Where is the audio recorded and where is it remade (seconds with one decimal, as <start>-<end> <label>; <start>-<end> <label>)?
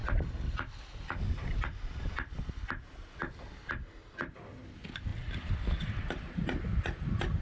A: 0.0-5.1 recorded; 5.1-5.9 remade; 5.9-7.4 recorded